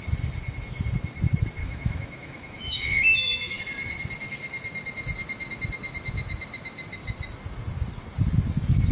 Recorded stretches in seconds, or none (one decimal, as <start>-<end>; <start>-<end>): 0.0-1.6; 3.6-8.9